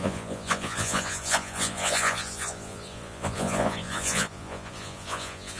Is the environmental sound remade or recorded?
remade